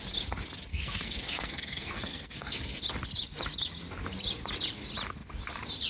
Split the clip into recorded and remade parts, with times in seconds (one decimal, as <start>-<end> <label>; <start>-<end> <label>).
0.0-0.7 recorded; 0.7-2.8 remade; 2.8-5.9 recorded

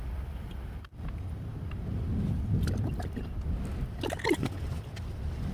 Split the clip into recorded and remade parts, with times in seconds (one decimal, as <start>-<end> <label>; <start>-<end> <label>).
0.0-5.5 recorded

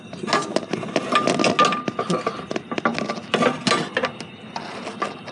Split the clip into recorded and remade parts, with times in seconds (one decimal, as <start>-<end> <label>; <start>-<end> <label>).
0.0-5.3 recorded